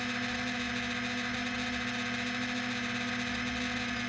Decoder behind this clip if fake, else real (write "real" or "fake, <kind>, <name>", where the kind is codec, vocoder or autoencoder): real